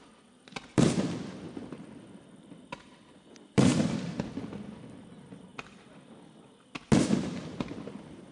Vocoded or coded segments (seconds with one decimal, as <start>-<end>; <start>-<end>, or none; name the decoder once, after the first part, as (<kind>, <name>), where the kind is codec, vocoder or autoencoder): 0.0-5.5 (vocoder, BigVGAN v2); 7.0-8.3